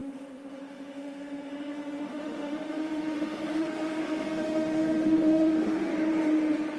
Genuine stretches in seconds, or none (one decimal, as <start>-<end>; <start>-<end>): 5.9-6.8